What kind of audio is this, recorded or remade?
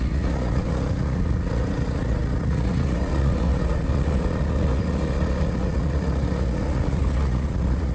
remade